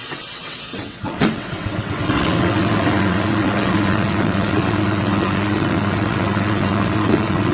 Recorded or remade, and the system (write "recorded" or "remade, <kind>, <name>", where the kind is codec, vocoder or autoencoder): remade, vocoder, WaveNeXt